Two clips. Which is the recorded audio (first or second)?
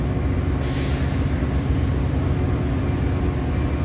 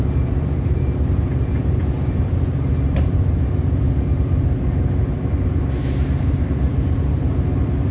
first